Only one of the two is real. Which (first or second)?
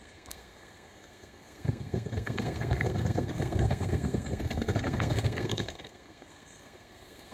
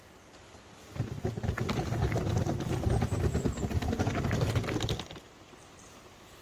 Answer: second